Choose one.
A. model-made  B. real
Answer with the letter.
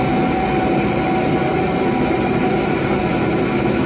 A